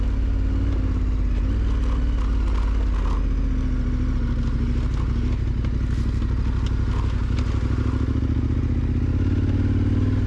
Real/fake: real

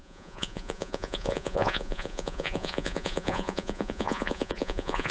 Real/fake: fake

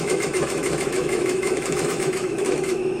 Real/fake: fake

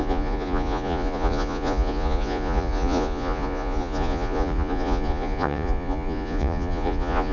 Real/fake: fake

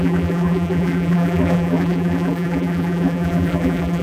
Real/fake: fake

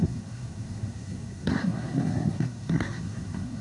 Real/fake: fake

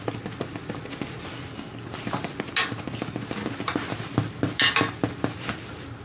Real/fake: real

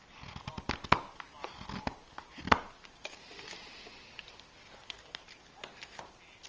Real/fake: real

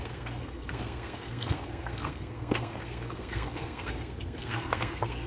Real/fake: fake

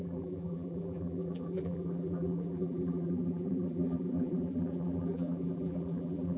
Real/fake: fake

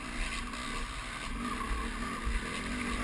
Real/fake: real